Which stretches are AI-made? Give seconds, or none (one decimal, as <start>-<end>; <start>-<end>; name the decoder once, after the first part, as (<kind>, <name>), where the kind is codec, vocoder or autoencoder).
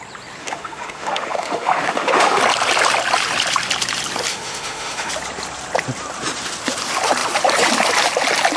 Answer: 0.4-2.4 (autoencoder, DAC-VAE); 4.3-5.1